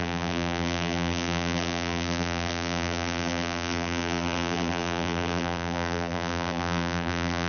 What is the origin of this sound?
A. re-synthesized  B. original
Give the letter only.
A